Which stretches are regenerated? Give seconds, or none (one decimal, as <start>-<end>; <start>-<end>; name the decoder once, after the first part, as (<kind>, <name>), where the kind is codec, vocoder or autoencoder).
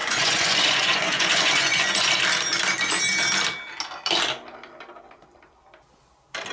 0.0-2.1 (vocoder, Vocos)